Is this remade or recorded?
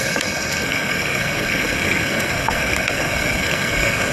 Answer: remade